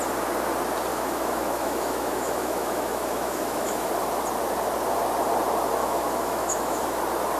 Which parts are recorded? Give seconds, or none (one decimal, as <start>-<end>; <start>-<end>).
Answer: 0.0-0.9; 3.9-5.8; 7.0-7.4